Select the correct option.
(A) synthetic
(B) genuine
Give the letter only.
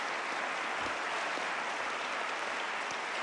B